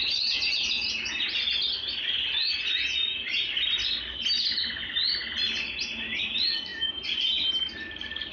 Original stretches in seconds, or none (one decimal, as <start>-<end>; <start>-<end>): 0.0-8.3